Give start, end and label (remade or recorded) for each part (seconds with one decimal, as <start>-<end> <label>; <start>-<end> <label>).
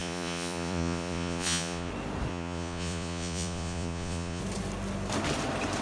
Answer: 0.0-1.9 remade; 1.9-2.3 recorded; 2.3-4.4 remade; 4.4-5.8 recorded